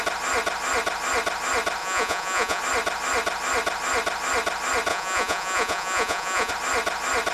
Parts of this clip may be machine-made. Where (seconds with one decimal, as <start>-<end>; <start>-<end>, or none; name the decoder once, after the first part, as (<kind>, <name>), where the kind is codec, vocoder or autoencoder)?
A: 1.8-2.6 (vocoder, Vocos); 4.9-6.5